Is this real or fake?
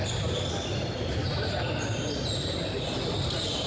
real